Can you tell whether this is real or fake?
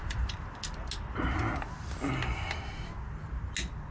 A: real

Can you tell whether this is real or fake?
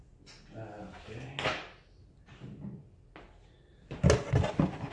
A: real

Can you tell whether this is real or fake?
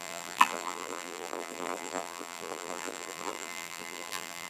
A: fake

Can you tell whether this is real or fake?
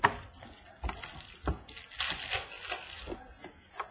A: real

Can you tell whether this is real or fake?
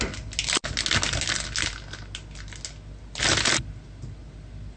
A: real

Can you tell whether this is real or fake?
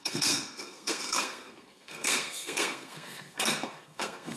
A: fake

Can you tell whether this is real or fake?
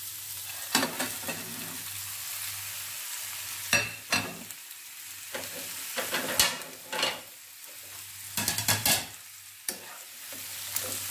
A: real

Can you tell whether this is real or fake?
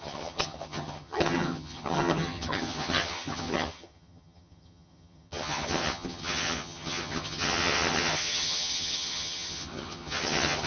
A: fake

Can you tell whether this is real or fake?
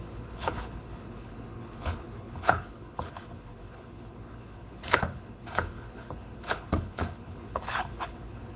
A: fake